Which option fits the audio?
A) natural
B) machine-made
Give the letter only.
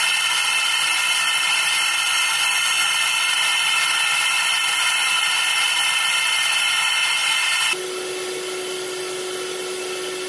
A